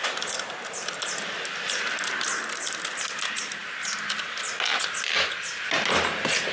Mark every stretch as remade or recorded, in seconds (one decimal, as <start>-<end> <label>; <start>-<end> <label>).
0.0-6.5 recorded